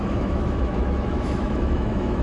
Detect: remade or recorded remade